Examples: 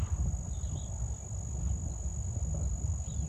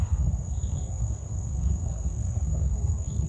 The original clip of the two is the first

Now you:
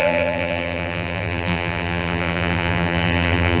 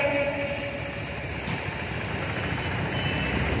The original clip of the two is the second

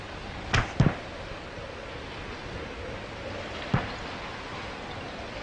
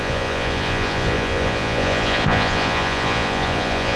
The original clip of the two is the first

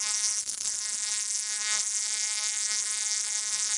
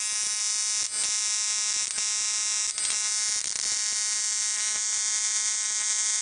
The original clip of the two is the second